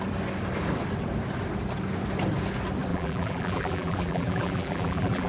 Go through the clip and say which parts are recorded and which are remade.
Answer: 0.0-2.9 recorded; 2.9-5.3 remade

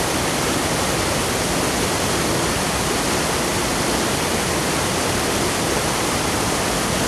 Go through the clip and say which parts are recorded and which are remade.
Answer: 0.0-3.5 recorded; 3.5-5.5 remade; 5.5-7.1 recorded

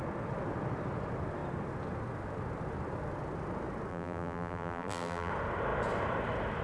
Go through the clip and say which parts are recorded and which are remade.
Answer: 0.0-3.9 recorded; 3.9-5.3 remade; 5.3-6.6 recorded